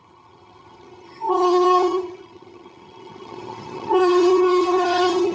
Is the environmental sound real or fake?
fake